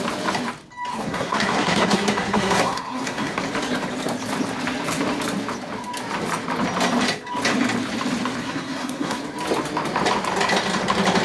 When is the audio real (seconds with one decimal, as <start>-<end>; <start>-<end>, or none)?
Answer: 0.0-0.9; 3.4-8.4; 9.2-11.2

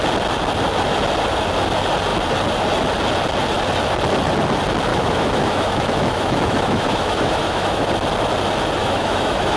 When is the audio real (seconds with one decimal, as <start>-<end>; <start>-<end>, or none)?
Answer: 0.0-4.9; 7.9-8.8

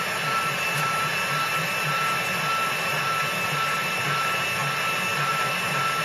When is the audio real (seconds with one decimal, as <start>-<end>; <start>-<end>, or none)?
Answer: 0.0-6.0

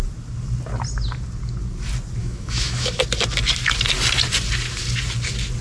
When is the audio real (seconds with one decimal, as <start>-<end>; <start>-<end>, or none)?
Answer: 0.0-2.2; 3.0-5.6

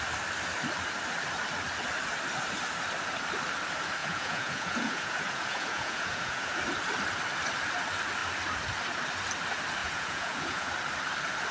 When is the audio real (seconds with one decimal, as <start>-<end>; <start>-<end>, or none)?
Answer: 0.0-4.0; 6.6-9.8; 10.7-11.5

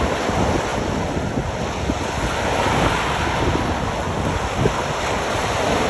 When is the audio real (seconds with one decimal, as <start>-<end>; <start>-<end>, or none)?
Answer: 0.0-5.9